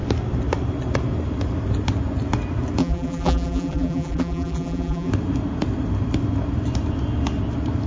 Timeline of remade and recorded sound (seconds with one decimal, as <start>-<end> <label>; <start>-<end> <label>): 0.0-2.8 recorded; 2.8-5.1 remade; 5.1-7.9 recorded